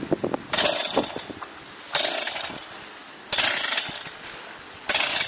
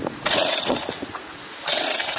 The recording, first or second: first